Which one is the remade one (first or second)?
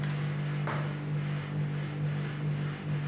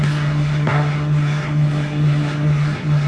second